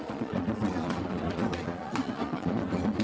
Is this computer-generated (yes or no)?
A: yes